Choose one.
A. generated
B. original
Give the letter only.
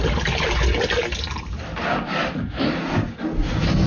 B